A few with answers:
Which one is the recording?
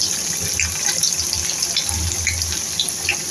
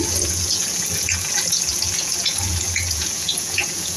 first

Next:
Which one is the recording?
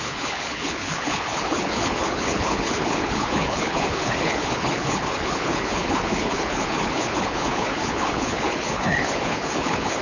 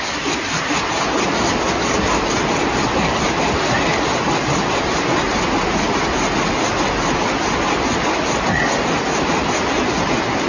second